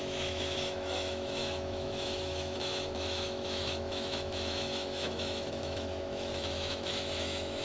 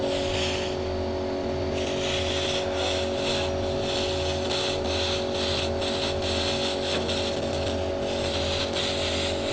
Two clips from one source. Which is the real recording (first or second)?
second